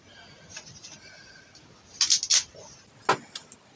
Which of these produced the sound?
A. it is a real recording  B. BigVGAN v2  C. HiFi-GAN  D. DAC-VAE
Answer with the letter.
A